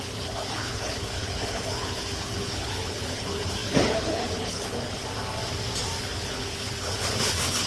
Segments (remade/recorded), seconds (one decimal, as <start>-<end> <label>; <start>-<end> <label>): 0.0-5.0 remade; 5.0-6.0 recorded; 6.0-7.7 remade